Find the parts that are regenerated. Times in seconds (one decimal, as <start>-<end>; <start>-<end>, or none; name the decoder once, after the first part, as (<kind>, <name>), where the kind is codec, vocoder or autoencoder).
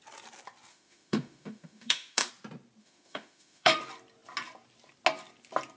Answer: 0.7-2.3 (autoencoder, DAC-VAE); 2.8-3.8